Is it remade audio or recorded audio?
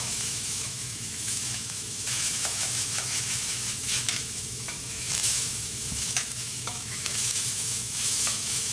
remade